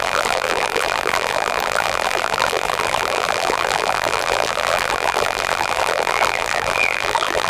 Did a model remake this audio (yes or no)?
yes